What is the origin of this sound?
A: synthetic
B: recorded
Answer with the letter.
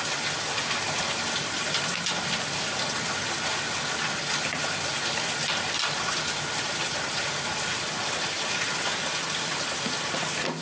B